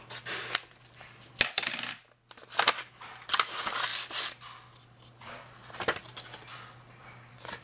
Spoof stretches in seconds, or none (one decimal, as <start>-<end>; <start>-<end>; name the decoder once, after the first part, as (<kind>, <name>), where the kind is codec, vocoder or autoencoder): none